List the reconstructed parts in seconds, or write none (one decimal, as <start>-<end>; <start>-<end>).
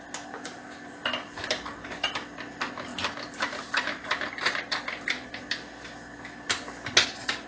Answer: 2.9-5.4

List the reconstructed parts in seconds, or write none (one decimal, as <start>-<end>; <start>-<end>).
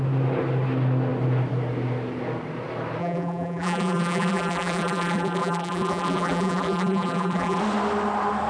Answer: 3.0-7.6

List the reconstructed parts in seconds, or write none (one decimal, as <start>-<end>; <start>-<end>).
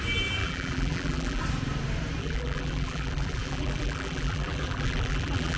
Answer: 0.4-1.4; 2.2-5.6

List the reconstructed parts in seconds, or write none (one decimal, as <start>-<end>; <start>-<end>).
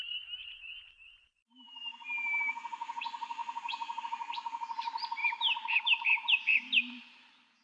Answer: 0.0-7.6